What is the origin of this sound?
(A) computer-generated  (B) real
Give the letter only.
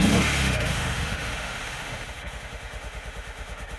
A